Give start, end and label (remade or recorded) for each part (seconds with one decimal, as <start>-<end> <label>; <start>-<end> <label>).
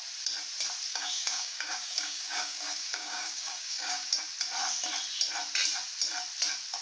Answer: 0.0-0.9 recorded; 0.9-4.2 remade; 4.2-6.8 recorded